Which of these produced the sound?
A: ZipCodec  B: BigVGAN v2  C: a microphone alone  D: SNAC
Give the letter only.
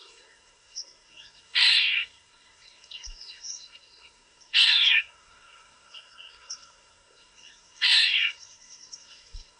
D